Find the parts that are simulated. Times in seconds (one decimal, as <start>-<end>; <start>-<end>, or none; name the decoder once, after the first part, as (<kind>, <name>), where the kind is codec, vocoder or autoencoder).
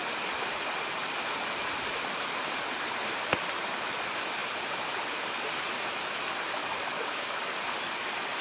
6.6-7.6 (codec, DAC)